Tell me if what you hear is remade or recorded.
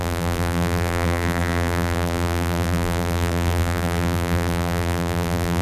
remade